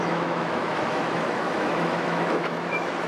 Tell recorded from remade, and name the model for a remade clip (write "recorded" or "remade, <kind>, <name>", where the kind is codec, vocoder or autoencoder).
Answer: remade, autoencoder, DAC-VAE